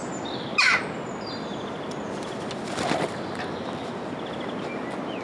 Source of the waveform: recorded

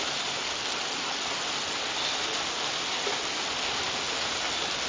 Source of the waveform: recorded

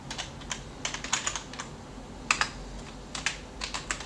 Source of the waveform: recorded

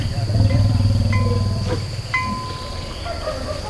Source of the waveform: remade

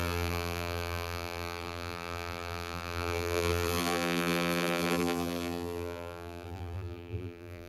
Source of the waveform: remade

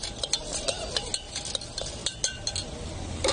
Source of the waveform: recorded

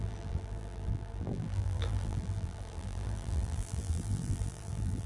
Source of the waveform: remade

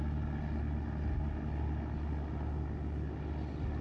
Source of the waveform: recorded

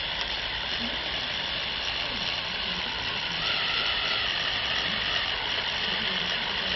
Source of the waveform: recorded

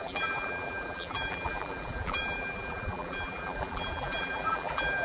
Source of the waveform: remade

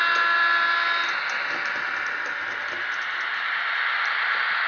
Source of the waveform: recorded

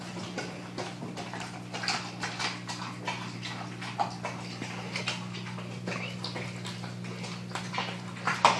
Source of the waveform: recorded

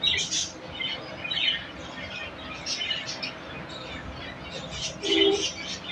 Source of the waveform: recorded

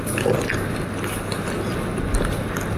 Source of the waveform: recorded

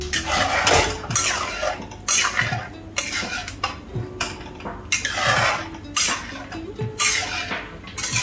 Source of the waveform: recorded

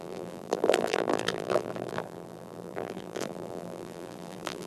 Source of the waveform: remade